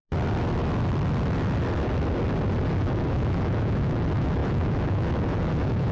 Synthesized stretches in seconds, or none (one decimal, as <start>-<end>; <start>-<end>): 2.8-5.9